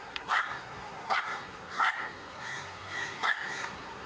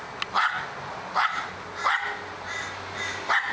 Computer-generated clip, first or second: first